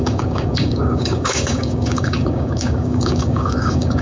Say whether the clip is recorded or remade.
remade